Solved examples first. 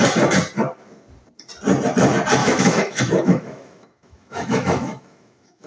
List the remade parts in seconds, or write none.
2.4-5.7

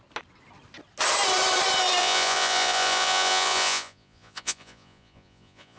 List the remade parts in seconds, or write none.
2.0-5.8

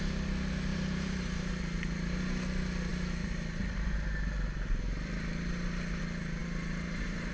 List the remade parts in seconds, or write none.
0.7-1.6; 6.4-7.3

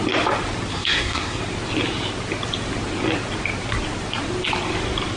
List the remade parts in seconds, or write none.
0.7-1.4

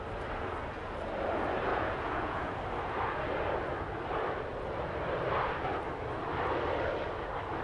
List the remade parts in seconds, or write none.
1.7-2.6